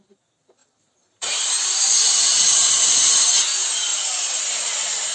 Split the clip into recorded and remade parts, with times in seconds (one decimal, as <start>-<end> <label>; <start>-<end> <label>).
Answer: 0.0-0.6 recorded; 0.6-3.3 remade; 3.3-3.9 recorded; 3.9-4.4 remade; 4.4-5.1 recorded